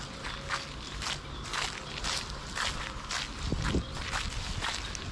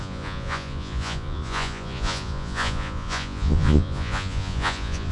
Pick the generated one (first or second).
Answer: second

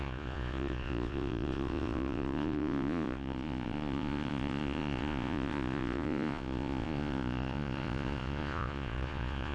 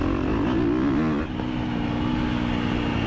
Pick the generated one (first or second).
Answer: first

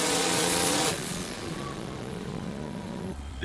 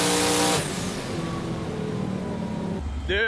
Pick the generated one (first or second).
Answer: first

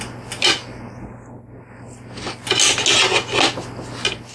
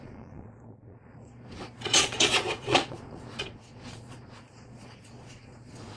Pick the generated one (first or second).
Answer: second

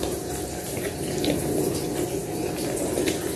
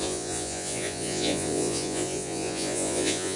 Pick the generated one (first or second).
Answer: second